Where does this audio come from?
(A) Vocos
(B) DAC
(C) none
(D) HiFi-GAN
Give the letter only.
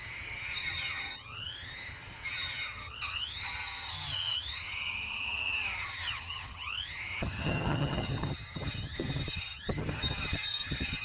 D